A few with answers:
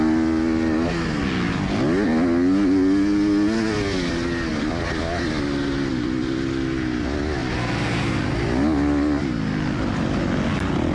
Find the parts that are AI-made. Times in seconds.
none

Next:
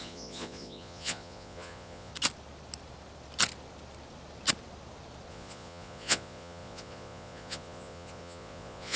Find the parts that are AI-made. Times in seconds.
0.0-2.1; 5.3-9.0

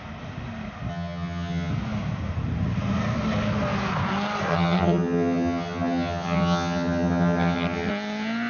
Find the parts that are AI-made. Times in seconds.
0.9-1.7; 4.5-7.9

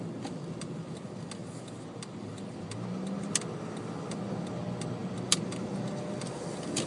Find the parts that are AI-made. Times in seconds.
none

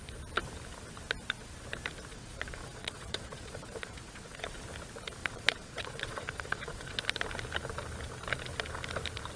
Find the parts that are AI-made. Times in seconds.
2.1-4.6; 5.2-7.0

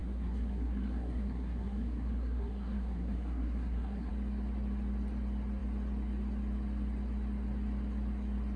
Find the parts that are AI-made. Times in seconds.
0.0-4.1

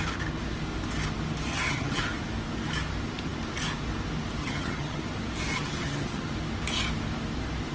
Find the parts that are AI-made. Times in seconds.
1.5-2.0; 4.4-5.0; 5.5-6.3

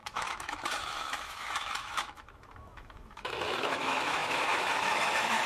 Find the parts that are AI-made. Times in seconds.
0.0-5.5